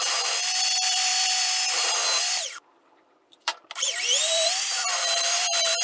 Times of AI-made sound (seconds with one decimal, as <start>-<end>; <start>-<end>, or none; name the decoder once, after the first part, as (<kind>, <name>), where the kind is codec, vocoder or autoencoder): 0.0-5.8 (vocoder, BigVGAN v2)